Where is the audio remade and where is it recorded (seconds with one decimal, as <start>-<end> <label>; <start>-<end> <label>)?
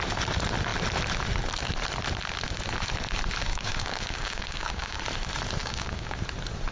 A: 0.0-3.5 recorded; 3.5-5.0 remade; 5.0-5.6 recorded; 5.6-6.2 remade; 6.2-6.7 recorded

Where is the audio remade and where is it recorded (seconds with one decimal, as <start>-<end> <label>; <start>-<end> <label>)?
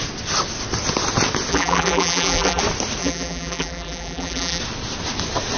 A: 0.0-1.5 recorded; 1.5-2.6 remade; 2.6-3.0 recorded; 3.0-4.6 remade; 4.6-5.6 recorded